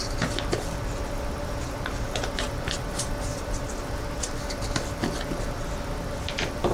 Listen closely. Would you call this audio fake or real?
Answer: real